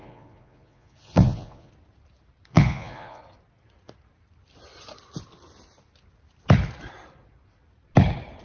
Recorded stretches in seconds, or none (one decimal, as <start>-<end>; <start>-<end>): 1.7-2.5; 3.2-8.4